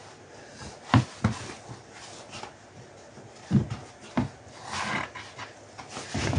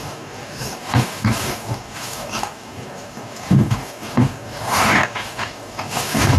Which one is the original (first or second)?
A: first